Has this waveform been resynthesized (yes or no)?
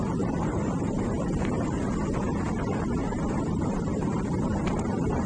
yes